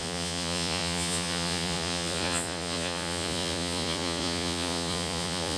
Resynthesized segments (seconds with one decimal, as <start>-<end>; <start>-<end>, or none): 0.0-5.6